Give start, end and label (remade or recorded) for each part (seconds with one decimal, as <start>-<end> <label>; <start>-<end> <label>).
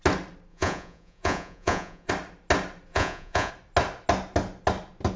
0.0-0.5 recorded; 0.5-2.1 remade; 2.1-2.9 recorded; 2.9-3.5 remade; 3.5-5.2 recorded